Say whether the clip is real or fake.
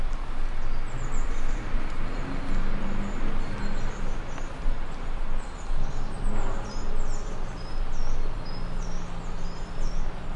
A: real